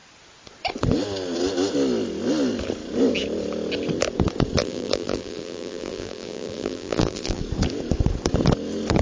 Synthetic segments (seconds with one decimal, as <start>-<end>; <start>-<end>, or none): 4.6-7.4